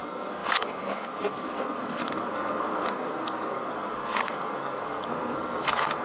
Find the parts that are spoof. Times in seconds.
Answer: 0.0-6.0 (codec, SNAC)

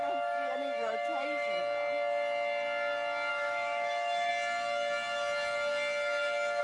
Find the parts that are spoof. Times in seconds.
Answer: 0.0-1.6 (autoencoder, DAC-VAE); 3.3-4.3

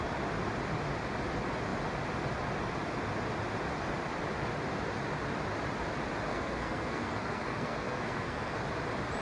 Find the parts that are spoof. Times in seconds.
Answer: 6.3-8.6 (codec, SNAC)

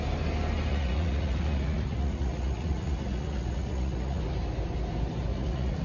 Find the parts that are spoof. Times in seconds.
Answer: 0.7-4.2 (vocoder, Vocos); 5.3-5.8

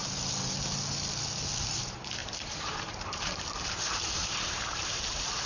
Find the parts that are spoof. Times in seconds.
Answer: 1.7-5.5 (vocoder, BigVGAN v2)

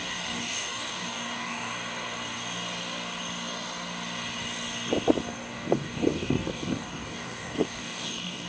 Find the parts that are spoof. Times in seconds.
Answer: 0.0-1.7 (codec, DAC); 5.5-8.5

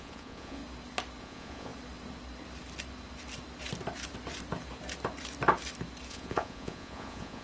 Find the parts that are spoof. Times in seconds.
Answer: 0.0-0.6 (vocoder, Vocos); 1.2-1.7; 6.1-7.4

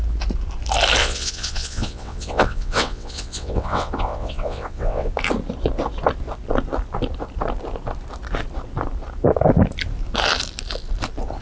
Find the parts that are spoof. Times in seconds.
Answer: 1.0-5.1 (vocoder, WaveNeXt)